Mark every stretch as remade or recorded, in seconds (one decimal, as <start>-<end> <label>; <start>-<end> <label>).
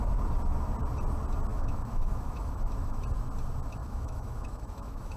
0.0-1.5 recorded; 1.5-3.0 remade; 3.0-3.8 recorded; 3.8-5.2 remade